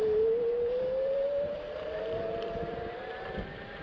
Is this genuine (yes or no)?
no